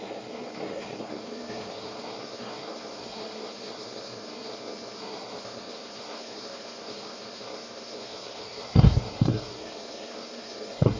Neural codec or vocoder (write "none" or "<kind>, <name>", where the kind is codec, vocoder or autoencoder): codec, SNAC